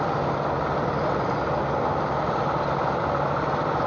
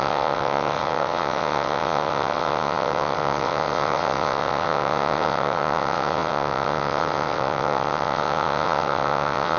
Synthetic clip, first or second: second